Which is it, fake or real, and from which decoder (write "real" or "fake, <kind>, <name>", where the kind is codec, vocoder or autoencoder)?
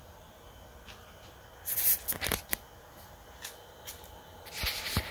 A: fake, vocoder, BigVGAN v2